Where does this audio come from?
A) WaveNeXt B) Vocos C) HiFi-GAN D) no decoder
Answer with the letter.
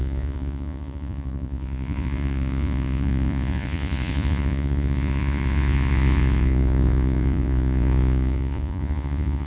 B